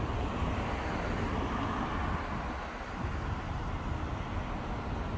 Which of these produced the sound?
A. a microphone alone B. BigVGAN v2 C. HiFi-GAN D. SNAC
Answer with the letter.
A